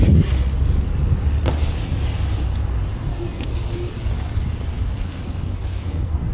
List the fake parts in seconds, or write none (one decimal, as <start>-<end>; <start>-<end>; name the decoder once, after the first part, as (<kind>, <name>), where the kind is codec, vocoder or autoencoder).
3.1-3.9 (codec, SNAC); 4.9-6.3